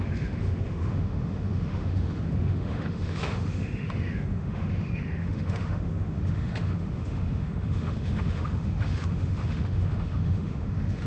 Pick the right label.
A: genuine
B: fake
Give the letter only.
B